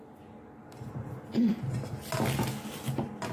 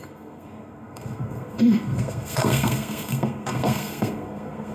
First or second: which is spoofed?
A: second